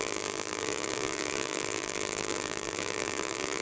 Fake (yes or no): yes